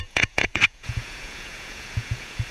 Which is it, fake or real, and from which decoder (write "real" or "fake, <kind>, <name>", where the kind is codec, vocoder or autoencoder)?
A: fake, vocoder, Vocos